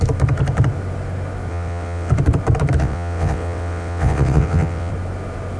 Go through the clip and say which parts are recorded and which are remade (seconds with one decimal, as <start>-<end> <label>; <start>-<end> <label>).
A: 0.0-1.5 recorded; 1.5-2.1 remade; 2.1-2.8 recorded; 2.8-4.9 remade; 4.9-5.6 recorded